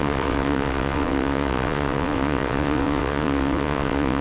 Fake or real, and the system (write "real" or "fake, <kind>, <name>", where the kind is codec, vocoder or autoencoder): fake, vocoder, WaveNeXt